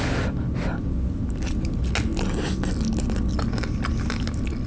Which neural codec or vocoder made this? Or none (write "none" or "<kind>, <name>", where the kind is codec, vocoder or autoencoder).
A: none